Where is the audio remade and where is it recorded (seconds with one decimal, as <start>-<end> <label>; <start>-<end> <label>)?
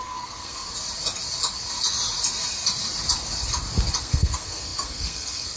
0.0-0.6 remade; 0.6-4.0 recorded; 4.0-5.6 remade